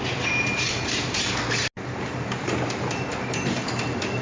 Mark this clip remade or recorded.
recorded